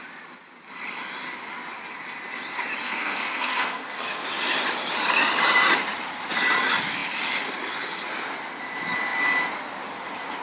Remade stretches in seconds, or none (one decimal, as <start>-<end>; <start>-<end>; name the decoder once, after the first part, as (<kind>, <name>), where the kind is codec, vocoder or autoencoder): 2.8-4.3 (codec, SNAC)